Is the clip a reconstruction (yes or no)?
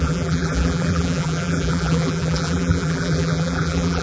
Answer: yes